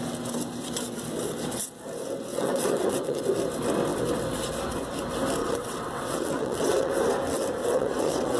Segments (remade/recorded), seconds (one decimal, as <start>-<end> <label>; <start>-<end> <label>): 0.0-2.3 recorded; 2.3-3.2 remade; 3.2-5.4 recorded; 5.4-6.9 remade; 6.9-7.6 recorded; 7.6-8.4 remade